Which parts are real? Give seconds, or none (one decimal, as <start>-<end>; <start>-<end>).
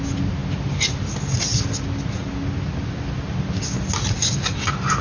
0.0-5.0